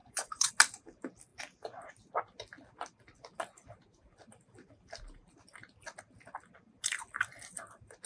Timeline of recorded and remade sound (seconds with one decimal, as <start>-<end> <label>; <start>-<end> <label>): 0.0-0.5 remade; 0.5-8.1 recorded